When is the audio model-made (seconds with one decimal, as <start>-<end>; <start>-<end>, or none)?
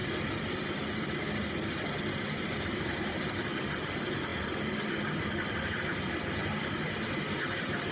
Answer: none